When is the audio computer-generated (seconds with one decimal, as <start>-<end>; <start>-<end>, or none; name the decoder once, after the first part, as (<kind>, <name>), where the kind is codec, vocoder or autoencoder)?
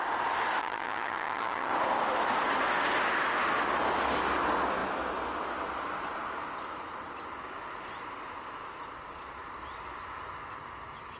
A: 0.6-1.7 (vocoder, HiFi-GAN)